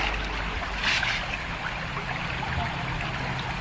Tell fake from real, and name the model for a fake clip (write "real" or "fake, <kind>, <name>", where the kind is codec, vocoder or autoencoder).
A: real